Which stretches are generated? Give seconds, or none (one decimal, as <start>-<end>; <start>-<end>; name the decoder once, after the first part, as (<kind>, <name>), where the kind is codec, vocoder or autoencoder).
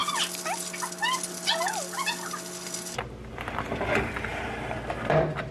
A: none